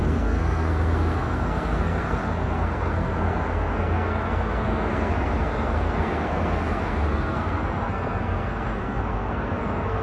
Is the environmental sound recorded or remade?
remade